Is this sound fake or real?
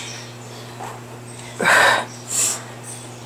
real